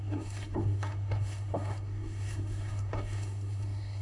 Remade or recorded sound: remade